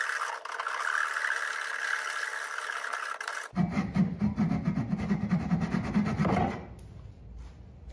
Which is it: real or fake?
real